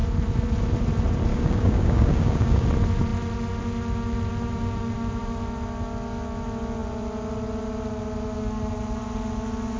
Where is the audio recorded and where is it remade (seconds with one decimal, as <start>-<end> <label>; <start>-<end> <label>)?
0.0-1.3 recorded; 1.3-2.7 remade; 2.7-9.8 recorded